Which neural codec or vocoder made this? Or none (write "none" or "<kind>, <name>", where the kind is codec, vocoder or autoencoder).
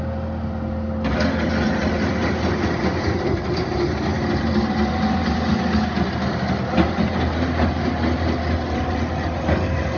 none